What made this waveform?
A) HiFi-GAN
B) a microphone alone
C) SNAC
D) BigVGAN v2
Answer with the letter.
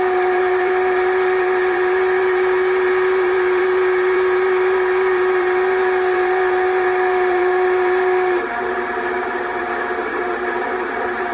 D